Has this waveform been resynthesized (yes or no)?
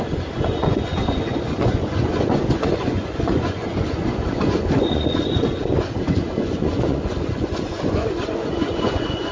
yes